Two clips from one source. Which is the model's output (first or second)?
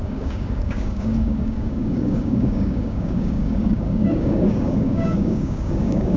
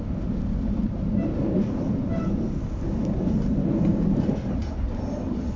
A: first